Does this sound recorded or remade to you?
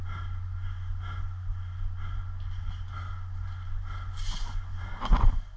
recorded